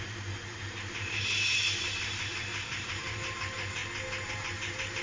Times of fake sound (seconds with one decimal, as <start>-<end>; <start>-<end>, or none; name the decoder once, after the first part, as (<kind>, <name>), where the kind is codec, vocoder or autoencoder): 0.0-3.8 (vocoder, BigVGAN v2); 4.3-5.0